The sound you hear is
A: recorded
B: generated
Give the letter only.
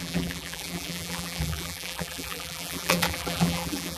B